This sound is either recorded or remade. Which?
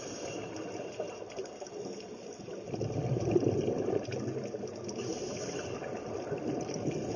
recorded